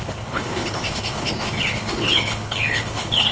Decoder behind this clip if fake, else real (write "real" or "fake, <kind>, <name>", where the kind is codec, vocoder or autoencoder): fake, codec, HILCodec